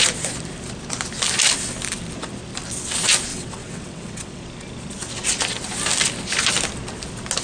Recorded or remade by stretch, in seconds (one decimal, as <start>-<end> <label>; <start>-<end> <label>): 0.0-3.3 recorded; 3.3-4.4 remade; 4.4-7.4 recorded